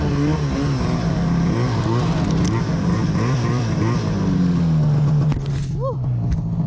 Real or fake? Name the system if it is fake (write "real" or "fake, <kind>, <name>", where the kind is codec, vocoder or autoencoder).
real